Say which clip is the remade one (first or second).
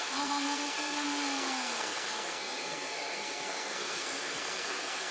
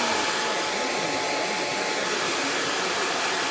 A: first